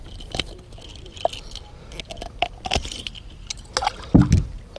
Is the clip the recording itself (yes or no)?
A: yes